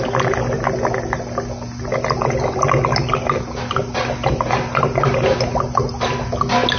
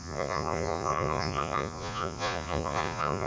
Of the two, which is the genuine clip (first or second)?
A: first